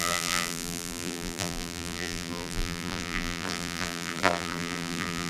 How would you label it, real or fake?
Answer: fake